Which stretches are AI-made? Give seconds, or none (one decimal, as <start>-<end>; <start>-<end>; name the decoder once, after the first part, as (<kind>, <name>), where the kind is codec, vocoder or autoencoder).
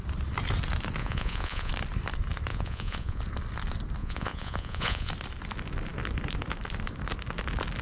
1.0-1.7 (vocoder, Vocos); 2.5-3.2; 4.0-5.1